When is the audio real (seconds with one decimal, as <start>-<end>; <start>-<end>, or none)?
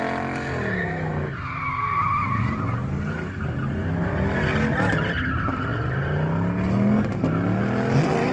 0.0-8.3